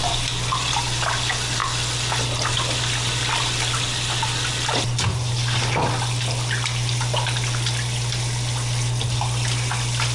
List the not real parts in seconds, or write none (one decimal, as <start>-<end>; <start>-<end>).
none

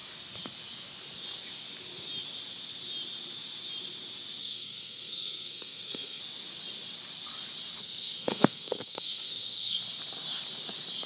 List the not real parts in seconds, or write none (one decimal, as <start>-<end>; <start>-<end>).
4.4-6.2; 7.8-9.8

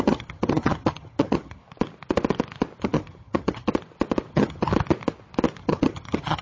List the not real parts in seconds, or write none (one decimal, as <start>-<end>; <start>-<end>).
0.0-1.6; 2.8-3.7; 4.3-4.7; 5.6-6.4